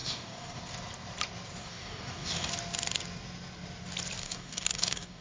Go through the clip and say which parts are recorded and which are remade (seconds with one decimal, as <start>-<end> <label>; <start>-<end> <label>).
0.0-0.6 remade; 0.6-1.6 recorded; 1.6-2.5 remade; 2.5-4.2 recorded; 4.2-5.2 remade